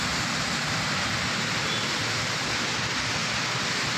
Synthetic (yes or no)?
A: no